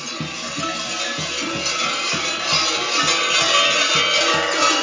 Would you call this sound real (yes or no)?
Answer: yes